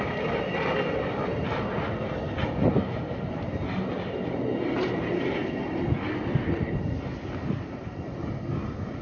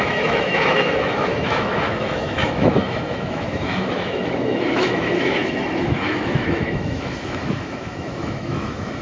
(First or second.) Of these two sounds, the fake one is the second